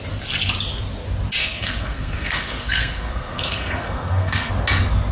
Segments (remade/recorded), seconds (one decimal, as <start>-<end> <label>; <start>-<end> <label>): 0.0-1.4 recorded; 1.4-4.5 remade; 4.5-5.1 recorded